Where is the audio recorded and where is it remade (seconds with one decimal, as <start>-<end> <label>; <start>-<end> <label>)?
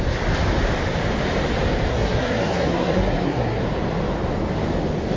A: 0.0-1.9 recorded; 1.9-3.6 remade; 3.6-5.2 recorded